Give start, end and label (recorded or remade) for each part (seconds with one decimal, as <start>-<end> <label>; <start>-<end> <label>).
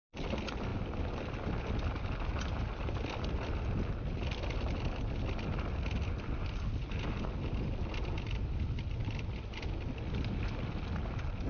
0.0-11.5 recorded